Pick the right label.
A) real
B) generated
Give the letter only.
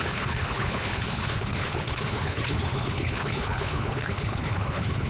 B